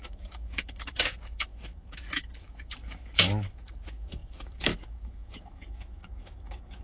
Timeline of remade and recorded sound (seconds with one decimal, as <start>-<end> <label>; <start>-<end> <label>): 0.0-6.8 remade